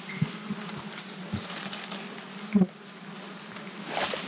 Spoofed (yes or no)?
no